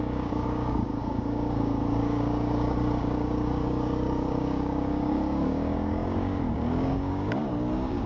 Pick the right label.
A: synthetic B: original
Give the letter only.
A